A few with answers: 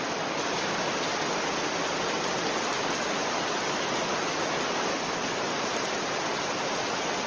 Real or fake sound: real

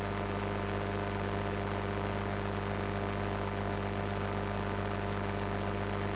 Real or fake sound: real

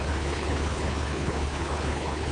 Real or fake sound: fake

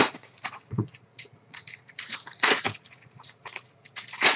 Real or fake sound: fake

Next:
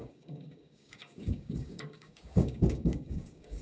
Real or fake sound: fake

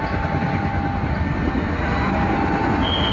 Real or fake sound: real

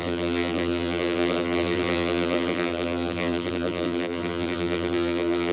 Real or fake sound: fake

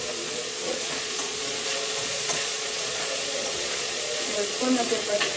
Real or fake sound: fake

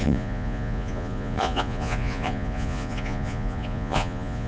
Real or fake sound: fake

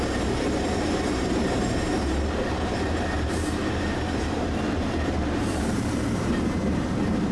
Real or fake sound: fake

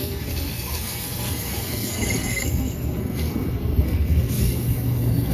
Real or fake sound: fake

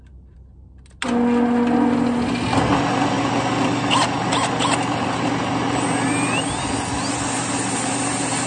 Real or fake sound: real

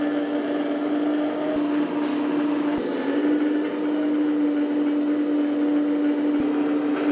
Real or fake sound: real